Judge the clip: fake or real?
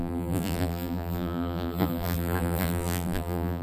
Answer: fake